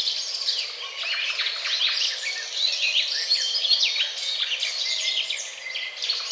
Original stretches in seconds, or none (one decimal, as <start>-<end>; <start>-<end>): 0.0-6.3